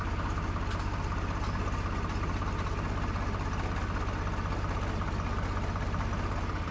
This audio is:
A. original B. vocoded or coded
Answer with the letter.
A